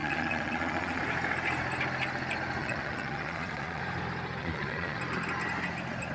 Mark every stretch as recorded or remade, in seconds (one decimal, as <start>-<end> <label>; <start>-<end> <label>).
0.0-1.0 remade; 1.0-2.6 recorded; 2.6-3.8 remade; 3.8-4.4 recorded; 4.4-5.0 remade; 5.0-6.1 recorded